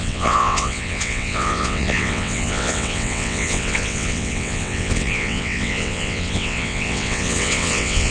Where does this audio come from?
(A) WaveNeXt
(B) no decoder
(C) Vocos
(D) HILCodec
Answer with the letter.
A